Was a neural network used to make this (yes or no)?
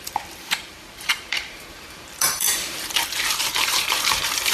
yes